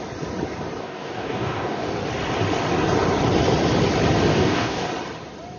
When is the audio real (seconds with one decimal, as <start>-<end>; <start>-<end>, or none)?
0.0-0.8; 1.9-4.3; 4.9-5.6